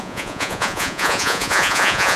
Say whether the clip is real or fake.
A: fake